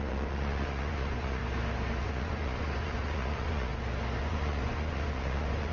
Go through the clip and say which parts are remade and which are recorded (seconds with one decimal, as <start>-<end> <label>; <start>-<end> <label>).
0.0-1.4 remade; 1.4-2.0 recorded; 2.0-3.7 remade; 3.7-4.2 recorded; 4.2-5.7 remade